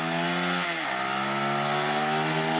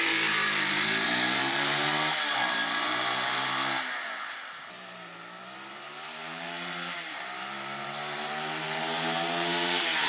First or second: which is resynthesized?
second